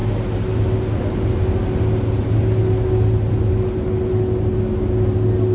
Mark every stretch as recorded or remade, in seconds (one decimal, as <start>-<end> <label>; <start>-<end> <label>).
0.0-5.5 recorded